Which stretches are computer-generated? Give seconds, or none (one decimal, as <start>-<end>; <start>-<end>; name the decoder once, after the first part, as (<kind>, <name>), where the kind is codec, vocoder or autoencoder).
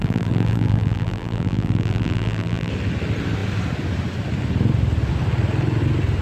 0.0-2.7 (vocoder, BigVGAN v2)